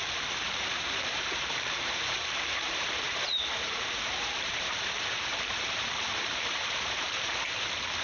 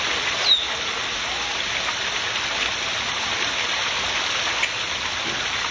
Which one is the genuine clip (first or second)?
second